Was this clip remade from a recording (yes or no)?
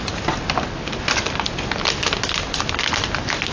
no